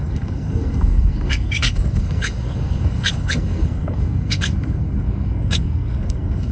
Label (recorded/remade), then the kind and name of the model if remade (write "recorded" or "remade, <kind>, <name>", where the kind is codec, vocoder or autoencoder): remade, codec, SNAC